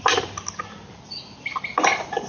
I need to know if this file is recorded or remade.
recorded